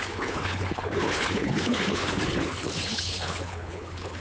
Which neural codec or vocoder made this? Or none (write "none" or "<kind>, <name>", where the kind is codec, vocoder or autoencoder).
codec, HILCodec